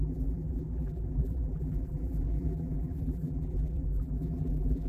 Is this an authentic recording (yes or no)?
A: no